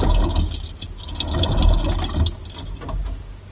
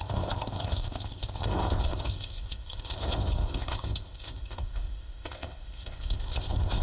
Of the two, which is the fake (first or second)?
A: second